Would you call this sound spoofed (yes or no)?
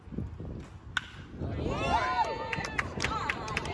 no